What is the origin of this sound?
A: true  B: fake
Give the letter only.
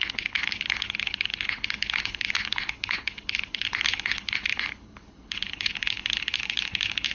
B